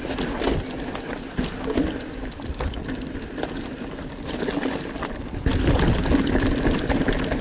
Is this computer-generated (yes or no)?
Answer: no